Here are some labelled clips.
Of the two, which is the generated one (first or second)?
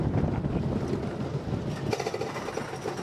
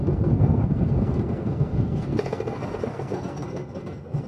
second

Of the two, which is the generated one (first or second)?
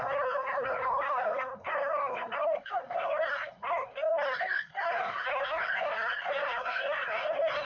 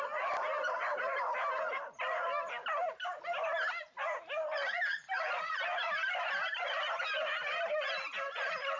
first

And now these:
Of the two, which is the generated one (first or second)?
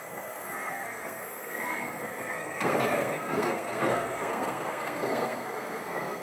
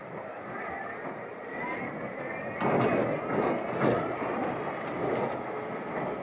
first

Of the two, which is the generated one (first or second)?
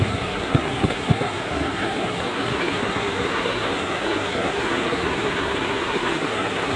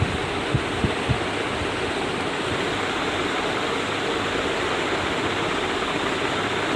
first